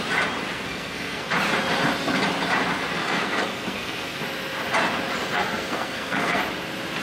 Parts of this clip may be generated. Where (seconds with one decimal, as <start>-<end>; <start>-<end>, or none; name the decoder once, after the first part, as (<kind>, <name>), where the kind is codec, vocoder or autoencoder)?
0.5-1.3 (codec, SNAC); 3.0-4.2; 5.2-6.4